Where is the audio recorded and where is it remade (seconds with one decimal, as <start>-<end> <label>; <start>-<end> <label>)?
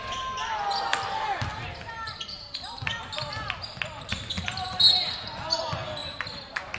0.0-1.5 recorded; 1.5-2.6 remade; 2.6-6.0 recorded; 6.0-6.8 remade